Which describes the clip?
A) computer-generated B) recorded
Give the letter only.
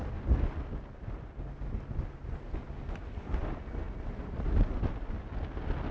B